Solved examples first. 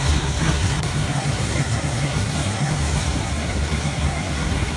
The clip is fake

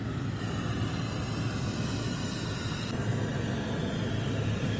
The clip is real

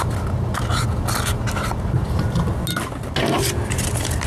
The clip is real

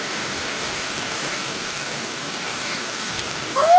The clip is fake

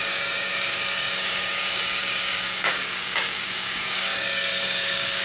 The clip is fake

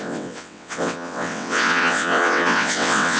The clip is fake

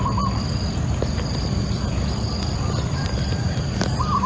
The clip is real